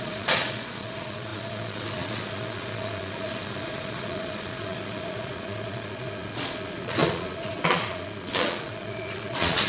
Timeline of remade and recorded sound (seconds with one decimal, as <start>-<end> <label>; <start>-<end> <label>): 0.0-9.7 remade